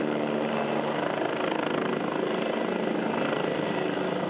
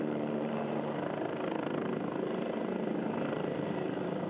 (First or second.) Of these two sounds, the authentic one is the first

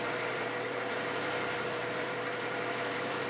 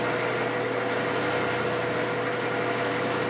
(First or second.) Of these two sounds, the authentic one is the second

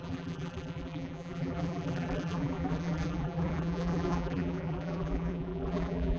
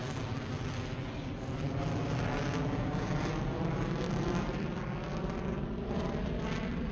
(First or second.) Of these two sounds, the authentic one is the second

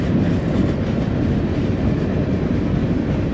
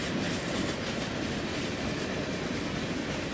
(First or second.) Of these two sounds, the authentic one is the first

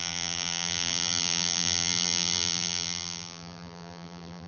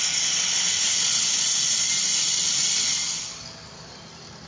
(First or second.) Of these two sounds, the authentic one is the second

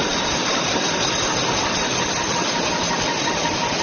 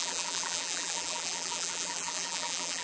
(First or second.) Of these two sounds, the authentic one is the first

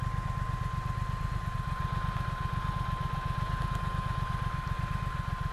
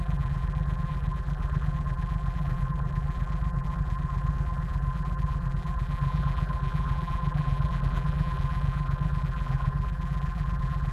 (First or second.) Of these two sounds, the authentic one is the first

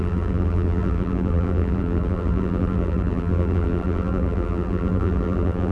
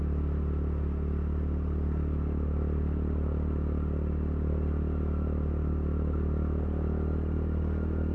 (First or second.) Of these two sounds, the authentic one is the second